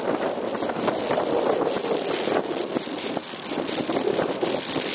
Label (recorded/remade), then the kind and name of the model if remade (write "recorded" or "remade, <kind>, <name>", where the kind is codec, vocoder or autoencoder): recorded